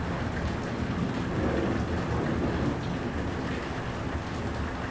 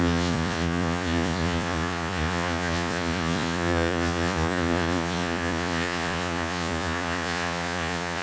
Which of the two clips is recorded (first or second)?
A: first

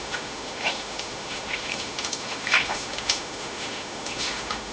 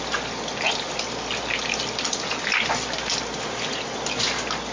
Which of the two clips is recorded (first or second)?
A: second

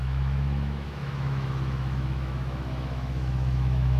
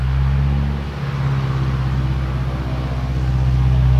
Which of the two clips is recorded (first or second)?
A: second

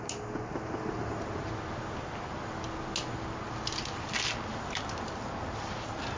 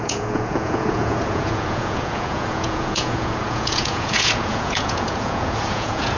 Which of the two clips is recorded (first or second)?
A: first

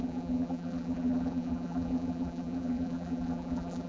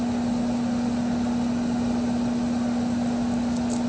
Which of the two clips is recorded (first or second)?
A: second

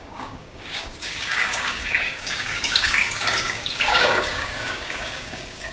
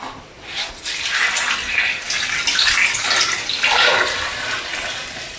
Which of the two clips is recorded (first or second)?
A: second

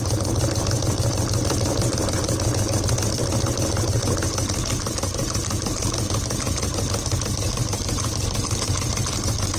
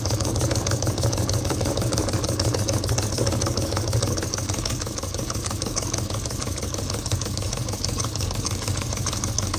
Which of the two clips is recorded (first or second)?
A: first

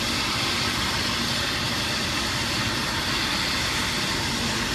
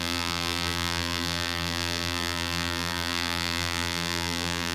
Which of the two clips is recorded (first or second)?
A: first